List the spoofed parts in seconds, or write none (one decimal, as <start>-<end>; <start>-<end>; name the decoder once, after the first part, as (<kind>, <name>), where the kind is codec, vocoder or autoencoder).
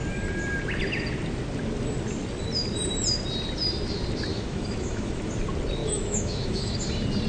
4.3-5.3 (autoencoder, DAC-VAE); 5.8-6.8